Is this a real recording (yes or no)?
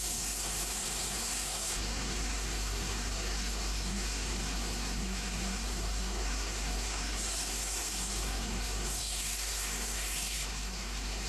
no